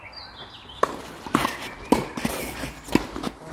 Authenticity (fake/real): real